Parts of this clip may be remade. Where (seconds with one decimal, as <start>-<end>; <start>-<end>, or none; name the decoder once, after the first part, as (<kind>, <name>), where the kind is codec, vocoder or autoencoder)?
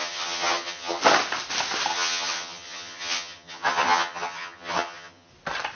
0.0-1.0 (vocoder, HiFi-GAN); 1.9-5.3